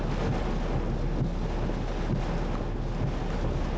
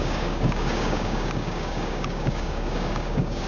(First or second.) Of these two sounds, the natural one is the first